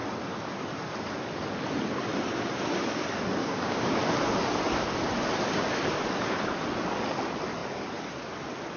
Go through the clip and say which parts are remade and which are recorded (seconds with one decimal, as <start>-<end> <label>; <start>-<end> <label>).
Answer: 0.0-3.4 recorded; 3.4-4.0 remade; 4.0-8.8 recorded